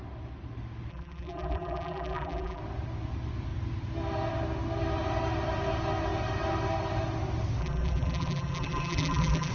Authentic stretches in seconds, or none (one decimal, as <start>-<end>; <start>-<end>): 0.0-0.9; 2.6-7.6